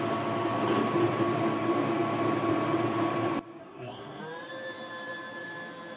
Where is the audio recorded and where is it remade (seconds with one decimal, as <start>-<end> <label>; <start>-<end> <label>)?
0.0-3.6 recorded; 3.6-4.2 remade; 4.2-6.0 recorded